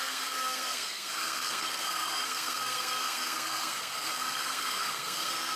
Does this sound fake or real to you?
fake